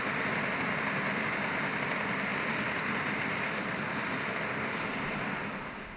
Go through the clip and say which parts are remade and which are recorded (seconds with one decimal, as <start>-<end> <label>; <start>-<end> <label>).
0.0-6.0 recorded